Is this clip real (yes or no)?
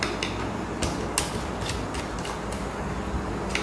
yes